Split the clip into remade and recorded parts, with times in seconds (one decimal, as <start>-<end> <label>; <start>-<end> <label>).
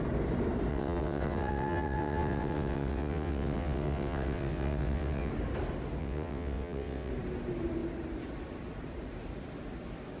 0.0-0.7 recorded; 0.7-5.3 remade; 5.3-6.0 recorded; 6.0-7.1 remade; 7.1-10.2 recorded